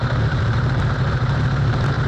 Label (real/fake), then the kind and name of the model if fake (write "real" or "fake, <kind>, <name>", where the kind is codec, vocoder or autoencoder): fake, vocoder, BigVGAN v2